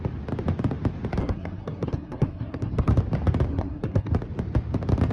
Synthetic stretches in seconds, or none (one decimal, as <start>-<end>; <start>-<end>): 1.2-2.9; 3.5-4.1